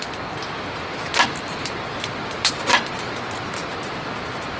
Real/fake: real